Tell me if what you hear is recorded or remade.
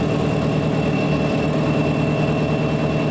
recorded